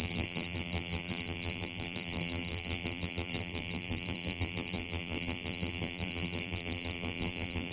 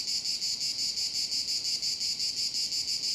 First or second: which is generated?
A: first